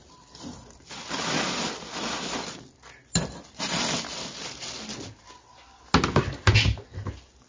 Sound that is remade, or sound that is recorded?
recorded